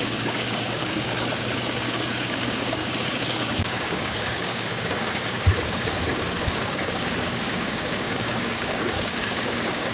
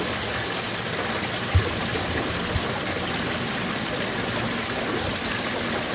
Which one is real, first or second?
second